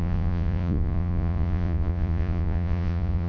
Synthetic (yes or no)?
yes